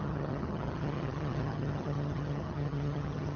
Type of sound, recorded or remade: remade